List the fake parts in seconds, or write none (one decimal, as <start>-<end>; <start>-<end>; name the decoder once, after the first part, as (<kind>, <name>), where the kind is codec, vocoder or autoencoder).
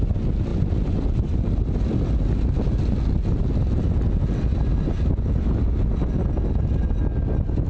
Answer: none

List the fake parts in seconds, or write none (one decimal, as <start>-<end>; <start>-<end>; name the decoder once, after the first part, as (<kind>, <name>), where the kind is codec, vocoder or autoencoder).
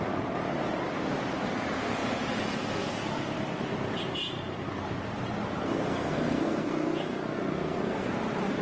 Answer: 5.6-8.1 (codec, SNAC)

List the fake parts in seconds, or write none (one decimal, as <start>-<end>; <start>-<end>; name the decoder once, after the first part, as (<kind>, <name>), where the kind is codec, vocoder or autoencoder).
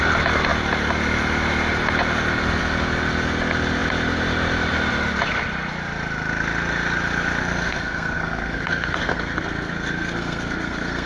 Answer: 7.4-11.1 (codec, SNAC)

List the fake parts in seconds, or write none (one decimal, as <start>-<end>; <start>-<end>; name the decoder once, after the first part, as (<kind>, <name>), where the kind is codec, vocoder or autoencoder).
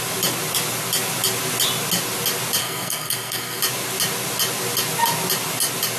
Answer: 2.6-3.6 (codec, SNAC)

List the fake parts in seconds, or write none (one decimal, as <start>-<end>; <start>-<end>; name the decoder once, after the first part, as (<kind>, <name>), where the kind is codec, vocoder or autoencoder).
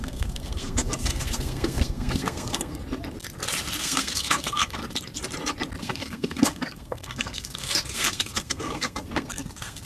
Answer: 0.0-2.8 (codec, SNAC); 3.8-4.8; 5.8-9.8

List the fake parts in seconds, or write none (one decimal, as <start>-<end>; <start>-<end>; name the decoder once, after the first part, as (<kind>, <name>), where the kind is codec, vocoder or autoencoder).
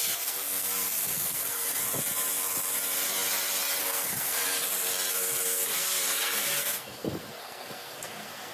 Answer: 0.0-1.8 (codec, SNAC); 3.8-4.4; 5.1-8.5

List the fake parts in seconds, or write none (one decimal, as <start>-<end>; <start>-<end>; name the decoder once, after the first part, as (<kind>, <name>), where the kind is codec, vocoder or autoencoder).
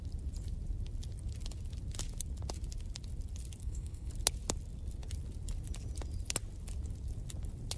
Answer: 3.6-4.1 (codec, SNAC)